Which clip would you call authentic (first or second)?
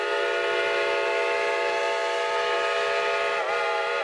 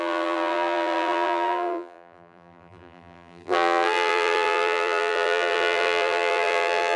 first